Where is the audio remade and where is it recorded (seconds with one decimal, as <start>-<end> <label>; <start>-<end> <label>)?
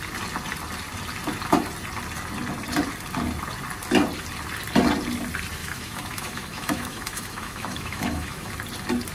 0.0-5.6 recorded; 5.6-8.5 remade; 8.5-9.1 recorded